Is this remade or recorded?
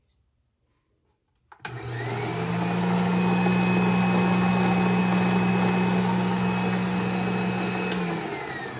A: recorded